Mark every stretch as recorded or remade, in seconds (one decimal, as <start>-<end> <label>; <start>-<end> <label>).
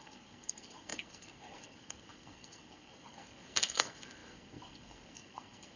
0.0-5.8 remade